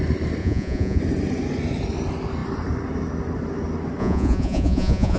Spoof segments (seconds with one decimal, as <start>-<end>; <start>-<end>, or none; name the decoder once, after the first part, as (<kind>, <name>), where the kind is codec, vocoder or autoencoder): 0.4-1.0 (vocoder, Vocos); 4.0-5.2